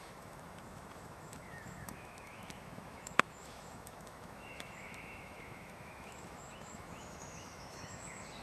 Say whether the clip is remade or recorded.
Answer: remade